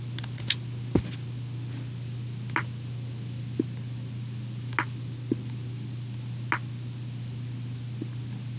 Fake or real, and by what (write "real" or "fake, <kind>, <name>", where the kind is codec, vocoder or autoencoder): real